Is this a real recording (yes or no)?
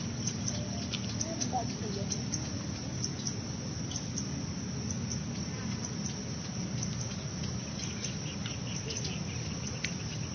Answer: yes